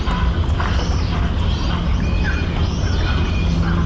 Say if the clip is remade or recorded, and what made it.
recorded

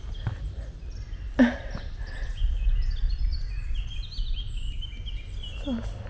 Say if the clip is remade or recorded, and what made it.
recorded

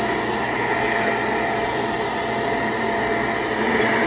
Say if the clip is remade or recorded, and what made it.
recorded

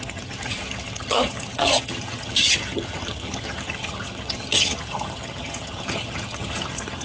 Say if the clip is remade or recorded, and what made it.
remade, vocoder, HiFi-GAN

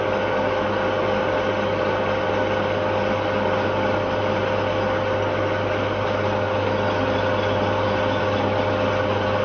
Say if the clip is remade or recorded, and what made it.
recorded